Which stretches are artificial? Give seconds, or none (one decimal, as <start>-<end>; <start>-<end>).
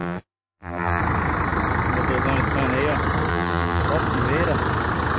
0.0-1.0; 3.3-3.8